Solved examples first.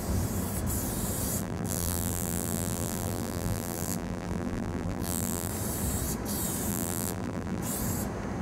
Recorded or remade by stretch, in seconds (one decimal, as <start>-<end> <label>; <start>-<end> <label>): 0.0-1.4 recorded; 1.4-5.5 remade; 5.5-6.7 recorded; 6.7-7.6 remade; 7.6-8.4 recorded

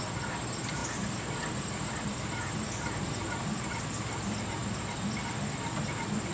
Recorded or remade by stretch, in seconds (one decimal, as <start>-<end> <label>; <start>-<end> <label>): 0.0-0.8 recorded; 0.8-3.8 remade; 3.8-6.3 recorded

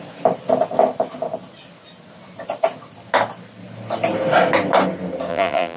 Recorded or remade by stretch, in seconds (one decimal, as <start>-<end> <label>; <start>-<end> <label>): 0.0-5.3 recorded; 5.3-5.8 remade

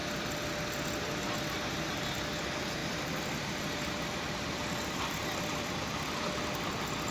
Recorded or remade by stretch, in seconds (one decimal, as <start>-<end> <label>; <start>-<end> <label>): 0.0-2.8 recorded; 2.8-6.5 remade; 6.5-7.1 recorded